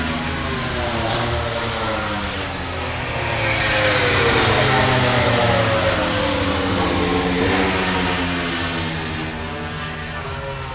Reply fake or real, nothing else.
real